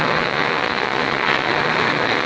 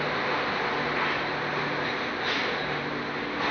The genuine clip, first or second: second